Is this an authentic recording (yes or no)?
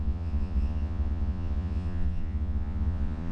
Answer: no